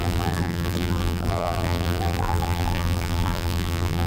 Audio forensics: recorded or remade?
remade